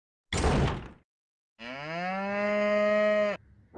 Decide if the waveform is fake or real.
real